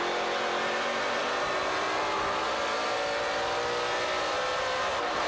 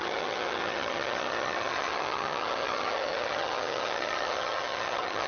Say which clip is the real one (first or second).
first